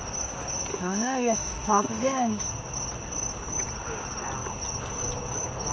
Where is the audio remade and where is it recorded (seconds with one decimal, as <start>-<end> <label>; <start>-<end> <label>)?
0.0-0.7 recorded; 0.7-2.5 remade; 2.5-5.7 recorded